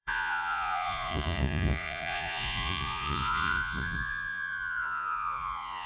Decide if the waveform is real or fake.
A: fake